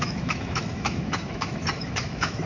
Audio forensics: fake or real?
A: fake